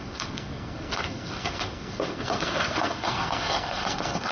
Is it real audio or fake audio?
fake